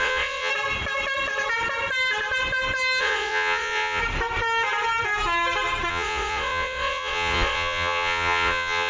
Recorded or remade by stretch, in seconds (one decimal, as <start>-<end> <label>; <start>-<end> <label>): 0.0-0.5 remade; 0.5-3.0 recorded; 3.0-4.0 remade; 4.0-5.9 recorded; 5.9-8.9 remade